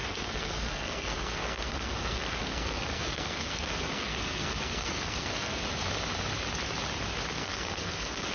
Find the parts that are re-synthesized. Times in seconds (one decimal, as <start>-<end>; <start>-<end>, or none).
0.0-5.6; 7.3-8.3